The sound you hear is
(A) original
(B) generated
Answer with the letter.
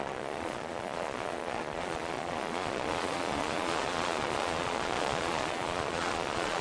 B